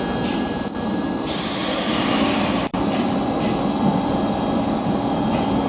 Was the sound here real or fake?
fake